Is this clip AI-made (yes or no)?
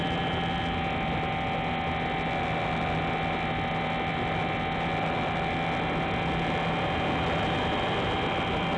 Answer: no